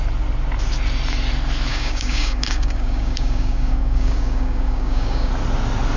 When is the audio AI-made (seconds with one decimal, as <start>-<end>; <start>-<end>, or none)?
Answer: 1.7-5.3